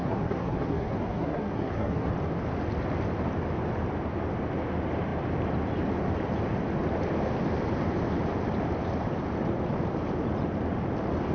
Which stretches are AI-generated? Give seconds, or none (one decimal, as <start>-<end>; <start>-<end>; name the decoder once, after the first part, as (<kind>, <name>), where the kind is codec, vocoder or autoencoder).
0.0-2.1 (codec, SNAC)